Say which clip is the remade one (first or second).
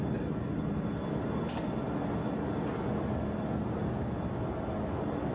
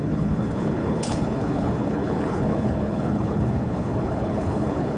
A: second